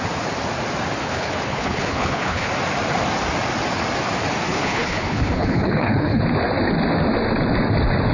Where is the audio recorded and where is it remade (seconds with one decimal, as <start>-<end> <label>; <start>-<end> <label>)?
0.0-1.0 recorded; 1.0-2.5 remade; 2.5-4.5 recorded; 4.5-6.2 remade; 6.2-8.1 recorded